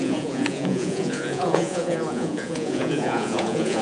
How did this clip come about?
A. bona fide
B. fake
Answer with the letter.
B